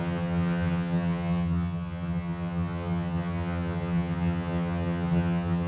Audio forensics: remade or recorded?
remade